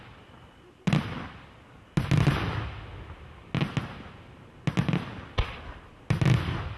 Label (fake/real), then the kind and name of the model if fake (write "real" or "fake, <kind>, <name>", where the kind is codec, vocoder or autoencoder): real